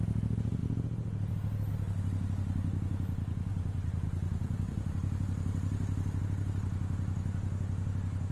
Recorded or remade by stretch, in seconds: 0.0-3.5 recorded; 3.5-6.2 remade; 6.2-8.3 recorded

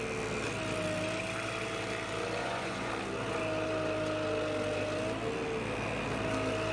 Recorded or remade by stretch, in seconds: 0.0-2.4 recorded; 2.4-2.9 remade; 2.9-6.7 recorded

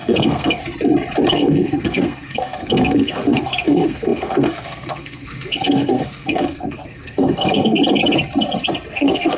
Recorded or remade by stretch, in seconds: 0.0-0.6 remade; 0.6-1.3 recorded; 1.3-7.8 remade; 7.8-8.9 recorded; 8.9-9.4 remade

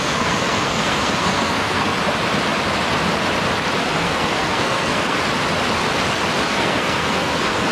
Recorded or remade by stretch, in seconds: 0.0-1.9 remade; 1.9-3.8 recorded; 3.8-5.2 remade; 5.2-6.4 recorded; 6.4-7.7 remade